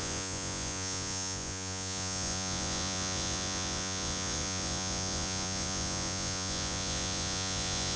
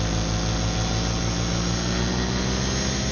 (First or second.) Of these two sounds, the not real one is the first